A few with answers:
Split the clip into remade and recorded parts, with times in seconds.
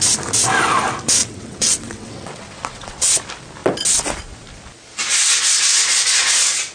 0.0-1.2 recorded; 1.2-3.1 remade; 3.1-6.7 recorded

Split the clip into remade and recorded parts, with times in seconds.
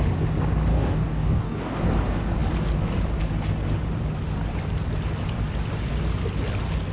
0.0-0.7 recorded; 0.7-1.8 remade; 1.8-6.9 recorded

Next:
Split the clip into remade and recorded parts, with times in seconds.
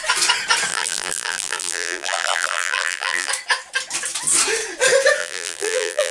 0.0-0.7 recorded; 0.7-3.3 remade; 3.3-5.2 recorded; 5.2-6.1 remade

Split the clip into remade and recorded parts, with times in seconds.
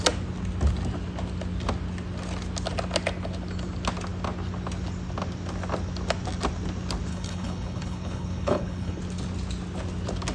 0.0-7.1 recorded; 7.1-9.0 remade; 9.0-10.3 recorded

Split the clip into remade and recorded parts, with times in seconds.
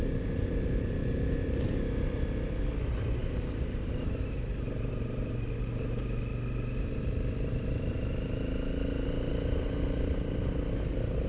0.0-3.2 recorded; 3.2-5.5 remade; 5.5-11.3 recorded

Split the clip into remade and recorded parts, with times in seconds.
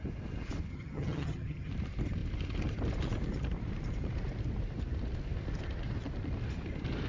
0.0-0.7 recorded; 0.7-1.7 remade; 1.7-7.1 recorded